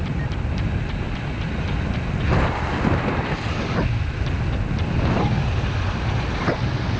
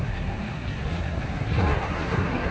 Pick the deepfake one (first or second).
second